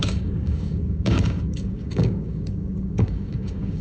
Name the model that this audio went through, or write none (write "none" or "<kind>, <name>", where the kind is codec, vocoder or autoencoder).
codec, DAC